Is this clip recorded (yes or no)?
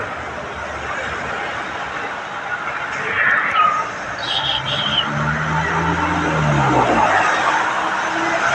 yes